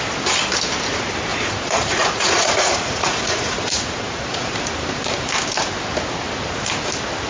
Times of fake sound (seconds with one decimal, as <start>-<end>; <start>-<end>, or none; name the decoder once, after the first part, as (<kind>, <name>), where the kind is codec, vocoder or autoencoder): 1.3-4.7 (vocoder, Vocos)